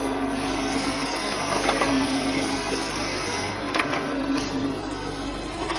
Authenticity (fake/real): fake